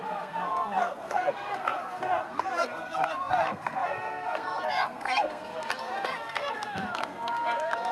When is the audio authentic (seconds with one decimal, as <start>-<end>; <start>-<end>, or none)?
none